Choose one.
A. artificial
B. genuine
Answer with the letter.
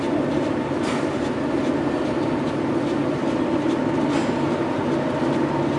B